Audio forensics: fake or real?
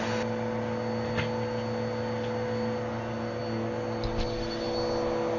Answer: real